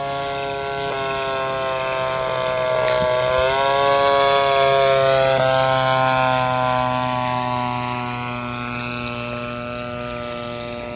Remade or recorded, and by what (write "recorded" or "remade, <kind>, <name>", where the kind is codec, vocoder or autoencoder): recorded